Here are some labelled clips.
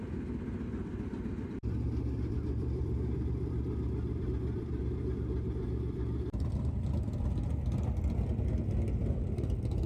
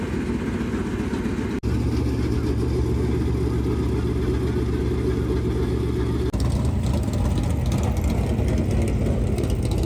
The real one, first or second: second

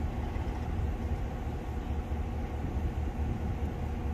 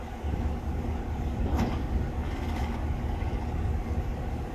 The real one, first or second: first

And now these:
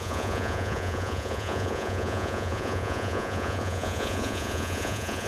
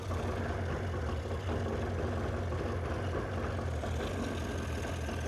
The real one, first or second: second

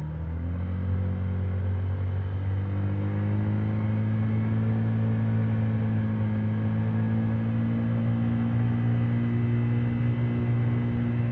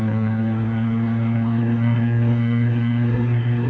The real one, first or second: first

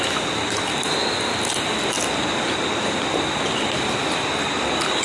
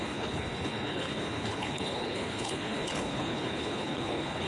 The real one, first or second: first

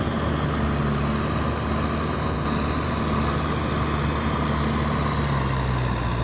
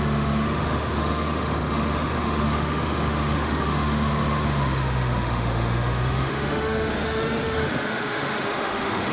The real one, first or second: first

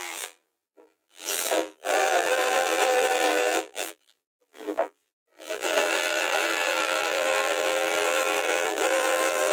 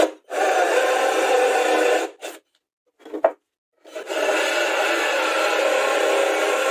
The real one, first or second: second